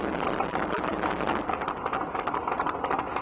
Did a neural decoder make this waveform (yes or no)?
no